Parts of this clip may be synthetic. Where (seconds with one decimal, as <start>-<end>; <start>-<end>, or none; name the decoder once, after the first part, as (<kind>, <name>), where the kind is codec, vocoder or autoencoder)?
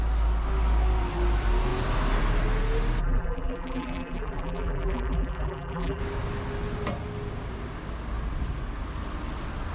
3.0-6.0 (vocoder, BigVGAN v2)